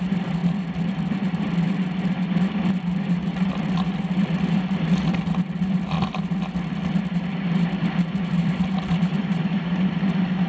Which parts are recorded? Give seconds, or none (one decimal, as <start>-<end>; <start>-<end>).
0.4-1.6; 3.3-7.8